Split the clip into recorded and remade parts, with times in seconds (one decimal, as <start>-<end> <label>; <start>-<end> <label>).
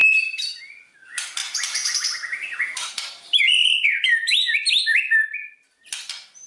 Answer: 0.0-0.6 remade; 0.6-1.4 recorded; 1.4-4.8 remade; 4.8-6.5 recorded